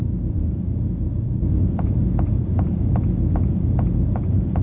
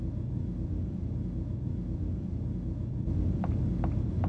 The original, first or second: second